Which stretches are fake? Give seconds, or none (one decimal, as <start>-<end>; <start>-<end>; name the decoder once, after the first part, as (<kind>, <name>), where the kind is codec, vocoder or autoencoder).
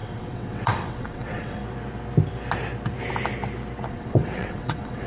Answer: 0.0-1.6 (vocoder, WaveNeXt); 3.9-5.1